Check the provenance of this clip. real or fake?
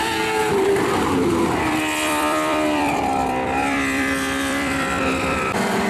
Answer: fake